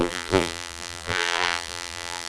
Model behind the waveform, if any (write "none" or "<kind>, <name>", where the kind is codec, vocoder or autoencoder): vocoder, BigVGAN v2